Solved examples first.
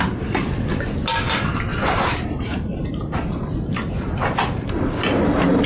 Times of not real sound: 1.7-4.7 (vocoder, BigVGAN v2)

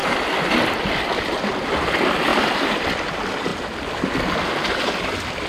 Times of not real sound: 0.0-1.0 (vocoder, BigVGAN v2); 2.3-3.1; 3.5-4.0

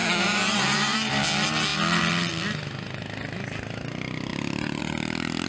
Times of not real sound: 0.0-1.1 (vocoder, BigVGAN v2); 4.3-4.8

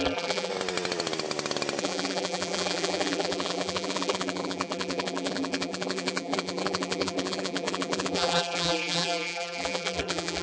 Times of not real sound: 0.0-0.5 (vocoder, BigVGAN v2); 1.8-10.4